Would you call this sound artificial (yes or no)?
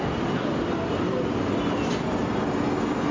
no